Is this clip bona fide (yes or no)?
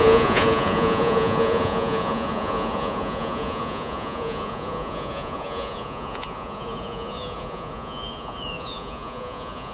no